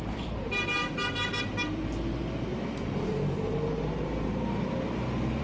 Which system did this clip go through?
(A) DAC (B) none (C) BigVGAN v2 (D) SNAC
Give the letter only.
C